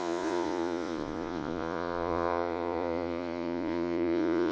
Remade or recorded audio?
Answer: remade